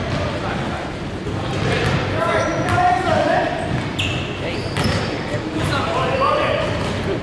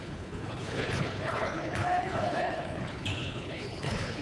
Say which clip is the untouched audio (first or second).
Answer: first